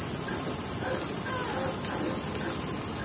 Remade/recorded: recorded